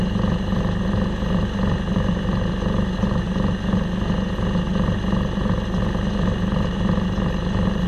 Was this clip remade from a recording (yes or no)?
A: no